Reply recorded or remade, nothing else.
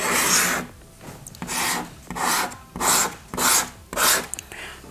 recorded